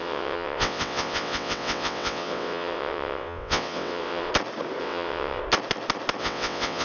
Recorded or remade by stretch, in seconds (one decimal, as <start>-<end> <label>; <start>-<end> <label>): 0.0-4.3 remade; 4.3-4.8 recorded; 4.8-5.4 remade; 5.4-6.2 recorded; 6.2-6.8 remade